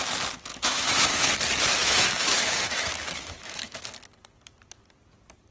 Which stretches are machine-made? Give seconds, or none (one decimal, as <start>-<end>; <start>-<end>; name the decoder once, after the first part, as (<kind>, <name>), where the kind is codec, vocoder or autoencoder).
0.5-1.3 (autoencoder, DAC-VAE); 1.8-3.8